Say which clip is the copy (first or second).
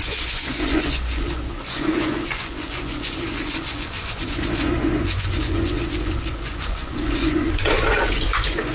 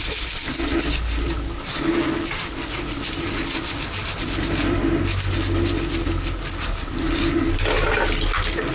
first